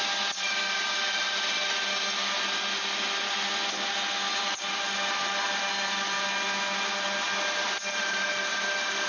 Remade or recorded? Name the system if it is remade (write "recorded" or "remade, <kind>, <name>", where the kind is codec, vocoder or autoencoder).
recorded